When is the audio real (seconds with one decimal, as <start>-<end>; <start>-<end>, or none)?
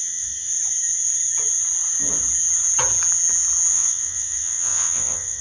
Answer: 0.5-3.7